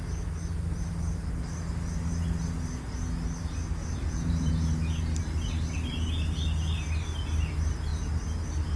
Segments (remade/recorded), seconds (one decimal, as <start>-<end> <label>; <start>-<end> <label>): 0.0-3.8 recorded; 3.8-4.5 remade; 4.5-8.8 recorded